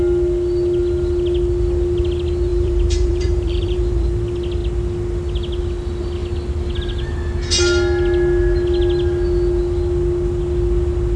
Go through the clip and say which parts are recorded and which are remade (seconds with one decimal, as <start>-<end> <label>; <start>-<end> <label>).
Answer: 0.0-2.5 recorded; 2.5-4.1 remade; 4.1-11.2 recorded